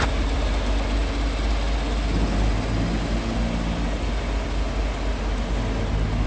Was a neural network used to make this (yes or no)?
no